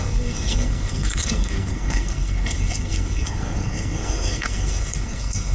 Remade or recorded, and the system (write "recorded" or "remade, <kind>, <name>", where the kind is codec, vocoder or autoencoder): remade, codec, SNAC